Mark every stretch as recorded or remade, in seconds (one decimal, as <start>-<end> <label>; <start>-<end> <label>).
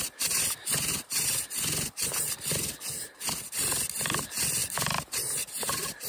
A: 0.0-6.1 recorded